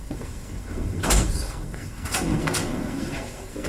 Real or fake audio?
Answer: fake